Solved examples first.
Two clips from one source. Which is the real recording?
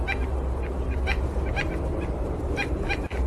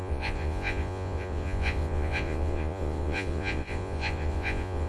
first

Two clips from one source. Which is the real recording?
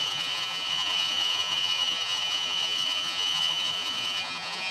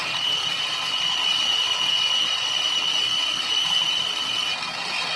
second